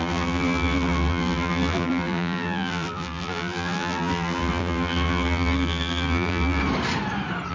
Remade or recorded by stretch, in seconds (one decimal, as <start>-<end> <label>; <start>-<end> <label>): 0.0-6.6 remade; 6.6-7.5 recorded